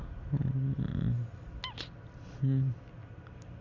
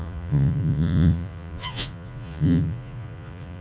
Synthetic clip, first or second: second